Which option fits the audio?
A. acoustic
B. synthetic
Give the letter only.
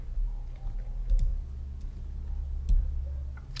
A